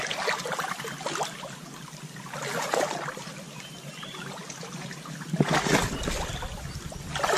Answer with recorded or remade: recorded